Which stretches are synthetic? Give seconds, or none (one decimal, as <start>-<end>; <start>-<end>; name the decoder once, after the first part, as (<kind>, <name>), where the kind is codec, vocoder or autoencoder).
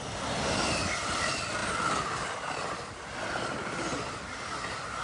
none